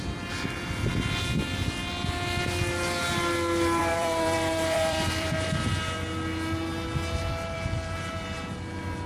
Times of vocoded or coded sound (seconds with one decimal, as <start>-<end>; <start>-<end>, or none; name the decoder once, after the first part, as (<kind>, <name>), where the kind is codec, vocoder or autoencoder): 3.8-5.7 (vocoder, BigVGAN v2)